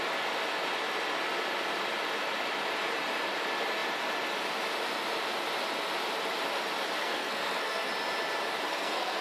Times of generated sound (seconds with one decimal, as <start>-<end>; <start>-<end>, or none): 7.0-7.9; 8.7-9.2